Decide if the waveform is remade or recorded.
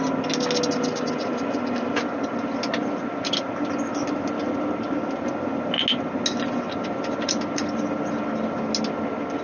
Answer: recorded